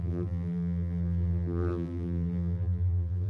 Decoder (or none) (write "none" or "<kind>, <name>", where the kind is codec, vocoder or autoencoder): vocoder, BigVGAN v2